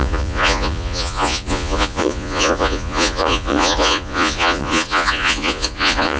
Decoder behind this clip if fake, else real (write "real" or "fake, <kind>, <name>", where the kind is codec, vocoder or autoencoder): fake, vocoder, Vocos